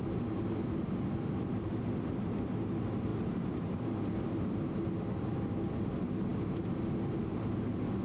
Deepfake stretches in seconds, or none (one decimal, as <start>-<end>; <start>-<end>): 3.1-4.1